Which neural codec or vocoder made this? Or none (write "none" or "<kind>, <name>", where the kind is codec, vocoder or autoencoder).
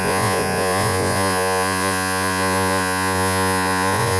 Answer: vocoder, Vocos